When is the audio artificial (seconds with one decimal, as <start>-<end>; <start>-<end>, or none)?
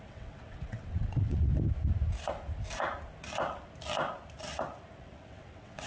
0.0-1.5; 5.0-5.9